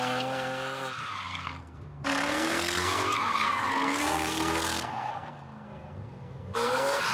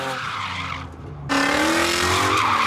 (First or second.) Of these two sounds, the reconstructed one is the first